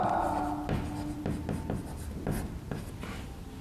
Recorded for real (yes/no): yes